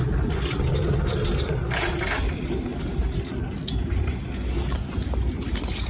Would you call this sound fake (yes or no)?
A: no